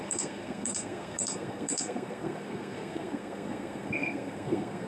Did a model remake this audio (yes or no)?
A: yes